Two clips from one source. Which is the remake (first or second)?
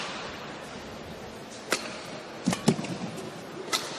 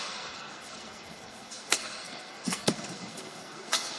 second